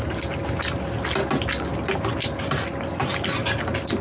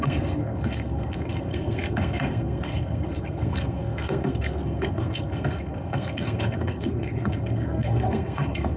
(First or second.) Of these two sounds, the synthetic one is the second